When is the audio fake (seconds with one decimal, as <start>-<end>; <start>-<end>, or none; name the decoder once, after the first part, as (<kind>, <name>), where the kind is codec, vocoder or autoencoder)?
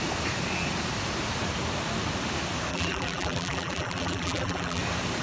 2.7-4.8 (vocoder, BigVGAN v2)